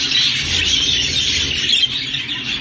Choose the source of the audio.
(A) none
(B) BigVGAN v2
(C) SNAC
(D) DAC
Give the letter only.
A